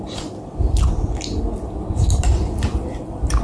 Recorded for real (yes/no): no